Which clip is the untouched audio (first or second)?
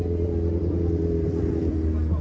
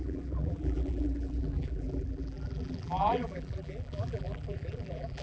first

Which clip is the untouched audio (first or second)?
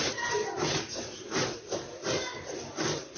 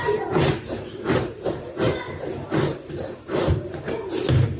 first